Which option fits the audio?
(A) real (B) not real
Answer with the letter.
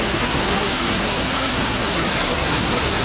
B